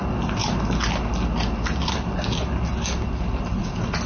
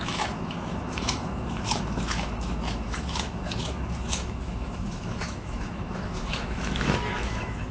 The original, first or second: first